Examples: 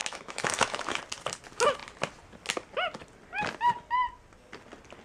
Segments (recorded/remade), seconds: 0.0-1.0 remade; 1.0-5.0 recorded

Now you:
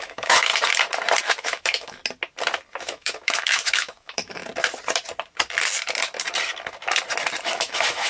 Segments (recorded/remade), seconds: 0.0-0.5 remade; 0.5-1.2 recorded; 1.2-2.0 remade; 2.0-2.8 recorded; 2.8-4.4 remade; 4.4-7.4 recorded; 7.4-8.1 remade

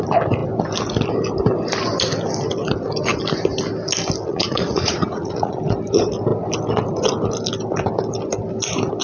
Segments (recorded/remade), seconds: 0.0-4.3 recorded; 4.3-5.6 remade; 5.6-9.0 recorded

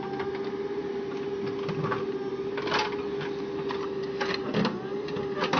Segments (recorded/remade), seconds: 0.0-5.6 recorded

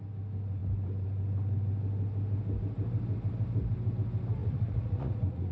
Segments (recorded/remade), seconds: 0.0-4.4 recorded; 4.4-5.5 remade

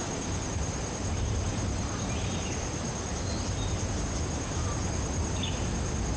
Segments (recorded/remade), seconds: 0.0-6.2 recorded